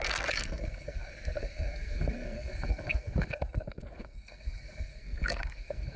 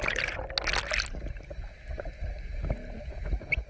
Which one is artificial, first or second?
first